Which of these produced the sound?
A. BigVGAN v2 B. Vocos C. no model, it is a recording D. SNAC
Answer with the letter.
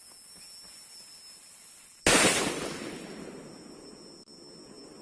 C